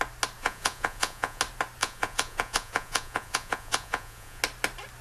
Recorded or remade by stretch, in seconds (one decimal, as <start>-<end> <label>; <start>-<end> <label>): 0.0-0.4 recorded; 0.4-1.4 remade; 1.4-1.8 recorded; 1.8-4.4 remade; 4.4-5.0 recorded